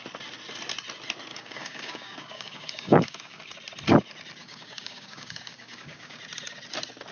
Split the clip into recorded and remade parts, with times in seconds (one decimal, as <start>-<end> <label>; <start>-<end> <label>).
0.0-1.3 recorded; 1.3-3.4 remade; 3.4-4.4 recorded; 4.4-6.2 remade; 6.2-7.1 recorded